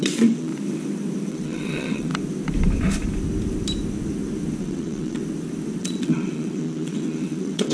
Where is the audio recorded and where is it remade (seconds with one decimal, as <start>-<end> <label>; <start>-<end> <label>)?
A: 0.0-0.5 remade; 0.5-1.3 recorded; 1.3-2.1 remade; 2.1-4.6 recorded; 4.6-5.2 remade; 5.2-5.8 recorded; 5.8-7.7 remade